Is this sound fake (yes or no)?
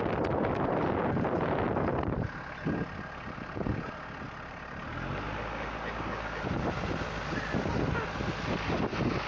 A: no